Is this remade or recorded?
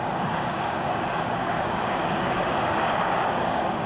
remade